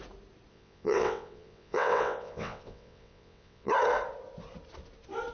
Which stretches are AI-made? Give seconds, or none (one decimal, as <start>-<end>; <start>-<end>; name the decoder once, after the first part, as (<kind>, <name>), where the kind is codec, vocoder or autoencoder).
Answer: 0.5-3.7 (vocoder, WaveNeXt)